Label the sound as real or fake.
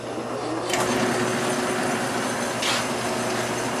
real